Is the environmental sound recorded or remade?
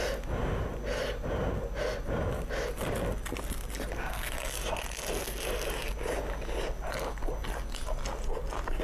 recorded